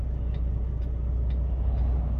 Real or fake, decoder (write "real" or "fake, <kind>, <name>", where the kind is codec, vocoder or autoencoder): real